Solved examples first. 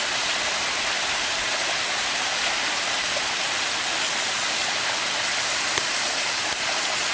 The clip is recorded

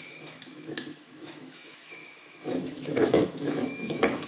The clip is remade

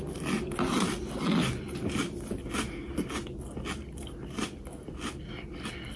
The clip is recorded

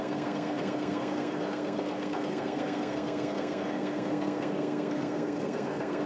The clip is remade